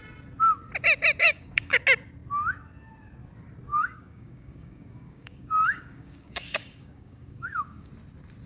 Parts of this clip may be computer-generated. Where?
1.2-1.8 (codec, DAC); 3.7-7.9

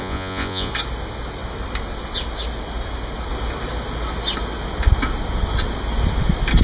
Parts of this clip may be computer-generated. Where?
0.0-0.7 (vocoder, Vocos)

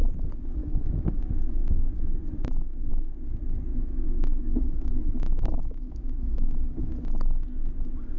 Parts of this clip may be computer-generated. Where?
0.6-1.2 (autoencoder, DAC-VAE); 3.7-6.8

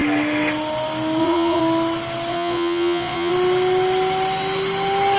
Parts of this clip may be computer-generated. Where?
1.2-1.6 (vocoder, Vocos); 2.3-3.3

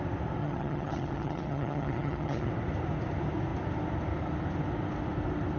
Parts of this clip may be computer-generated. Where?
0.4-2.5 (vocoder, HiFi-GAN)